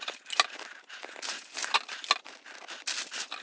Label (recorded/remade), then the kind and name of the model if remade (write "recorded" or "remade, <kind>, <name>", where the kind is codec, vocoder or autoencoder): recorded